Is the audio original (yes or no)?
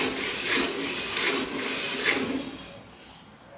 yes